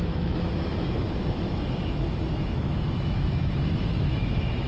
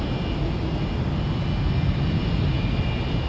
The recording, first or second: second